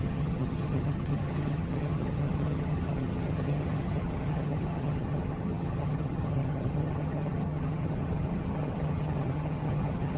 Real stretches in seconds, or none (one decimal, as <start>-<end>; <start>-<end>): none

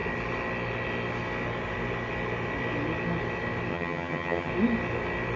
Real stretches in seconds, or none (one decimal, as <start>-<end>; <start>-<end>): 0.0-3.7; 4.5-5.4

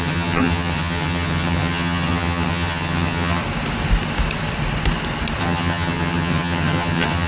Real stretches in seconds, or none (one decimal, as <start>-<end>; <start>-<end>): 3.4-5.4

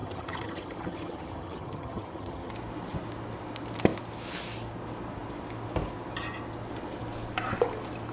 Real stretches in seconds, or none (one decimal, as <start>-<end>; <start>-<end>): 2.5-8.1